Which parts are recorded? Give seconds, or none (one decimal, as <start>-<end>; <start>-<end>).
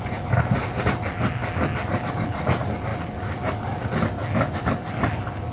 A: 0.0-5.5